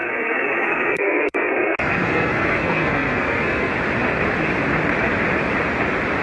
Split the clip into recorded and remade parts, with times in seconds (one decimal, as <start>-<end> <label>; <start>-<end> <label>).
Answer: 0.0-3.7 remade; 3.7-6.2 recorded

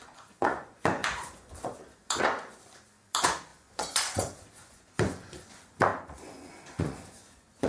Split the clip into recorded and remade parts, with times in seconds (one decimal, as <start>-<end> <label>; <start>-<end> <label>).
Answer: 0.0-7.7 remade